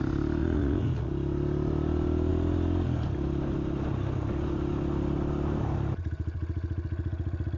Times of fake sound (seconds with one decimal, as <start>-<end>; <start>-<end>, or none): 0.4-1.1